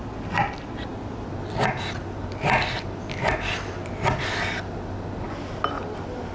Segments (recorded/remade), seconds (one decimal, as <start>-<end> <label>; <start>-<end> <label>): 0.0-6.3 recorded